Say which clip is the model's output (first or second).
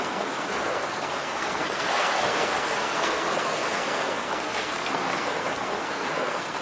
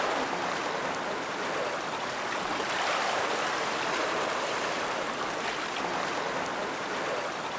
first